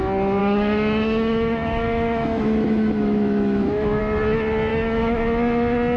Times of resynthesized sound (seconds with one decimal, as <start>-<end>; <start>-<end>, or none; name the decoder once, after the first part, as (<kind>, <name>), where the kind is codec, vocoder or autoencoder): 0.4-4.0 (autoencoder, DAC-VAE); 4.7-5.2